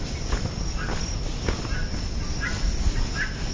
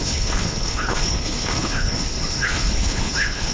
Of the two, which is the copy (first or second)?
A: second